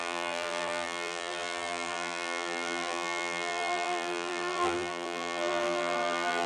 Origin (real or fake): fake